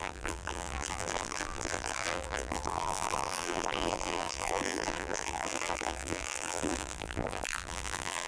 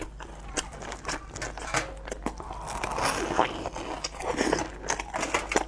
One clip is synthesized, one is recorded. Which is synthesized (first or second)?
first